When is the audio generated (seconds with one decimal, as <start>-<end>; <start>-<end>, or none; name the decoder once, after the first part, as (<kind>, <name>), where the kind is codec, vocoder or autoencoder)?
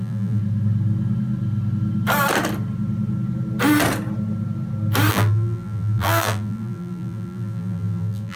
0.0-0.4 (vocoder, BigVGAN v2); 5.1-8.4